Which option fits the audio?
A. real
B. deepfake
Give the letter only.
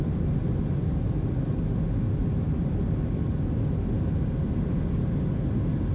A